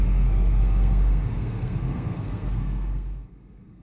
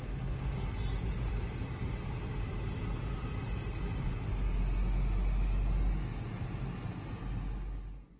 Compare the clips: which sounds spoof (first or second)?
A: first